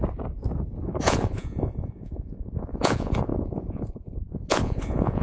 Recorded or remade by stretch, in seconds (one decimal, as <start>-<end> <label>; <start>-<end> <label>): 0.0-1.0 recorded; 1.0-5.2 remade